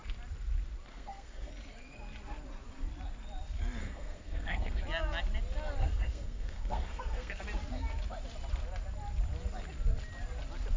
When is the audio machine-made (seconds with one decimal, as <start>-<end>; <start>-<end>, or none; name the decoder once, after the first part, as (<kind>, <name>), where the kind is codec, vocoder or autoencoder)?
0.9-1.5 (codec, SNAC); 3.8-4.8; 5.8-7.4